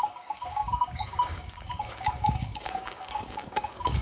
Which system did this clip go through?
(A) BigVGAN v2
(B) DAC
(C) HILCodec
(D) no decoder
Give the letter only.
B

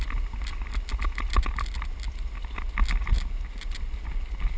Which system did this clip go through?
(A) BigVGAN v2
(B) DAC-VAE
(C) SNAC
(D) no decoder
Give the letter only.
D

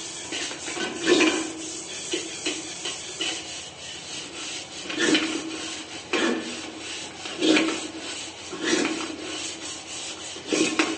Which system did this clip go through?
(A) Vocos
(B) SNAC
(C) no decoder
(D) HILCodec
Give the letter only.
C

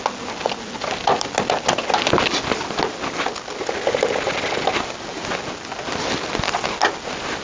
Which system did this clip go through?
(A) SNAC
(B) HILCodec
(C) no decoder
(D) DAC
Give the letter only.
C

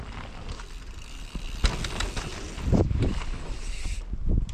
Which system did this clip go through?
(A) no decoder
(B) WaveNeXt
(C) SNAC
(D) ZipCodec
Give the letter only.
A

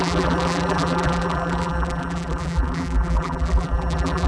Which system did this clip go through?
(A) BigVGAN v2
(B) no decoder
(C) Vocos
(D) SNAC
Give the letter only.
A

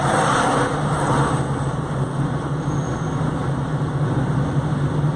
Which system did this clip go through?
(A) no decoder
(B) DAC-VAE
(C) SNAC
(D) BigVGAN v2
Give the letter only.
A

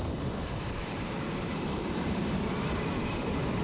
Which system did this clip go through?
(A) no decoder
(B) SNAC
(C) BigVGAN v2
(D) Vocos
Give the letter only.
C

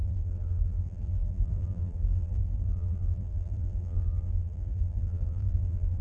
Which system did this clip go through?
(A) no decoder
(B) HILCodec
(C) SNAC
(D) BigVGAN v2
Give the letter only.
D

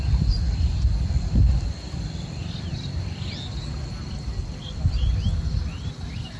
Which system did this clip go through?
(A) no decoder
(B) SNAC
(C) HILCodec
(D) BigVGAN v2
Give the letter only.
A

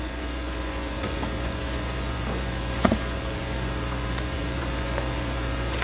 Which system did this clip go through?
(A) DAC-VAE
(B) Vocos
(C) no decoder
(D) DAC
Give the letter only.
B